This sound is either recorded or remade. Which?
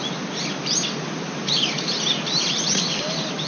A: recorded